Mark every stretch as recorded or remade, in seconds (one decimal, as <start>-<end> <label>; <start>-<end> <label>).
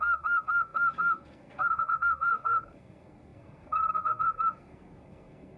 0.0-5.6 remade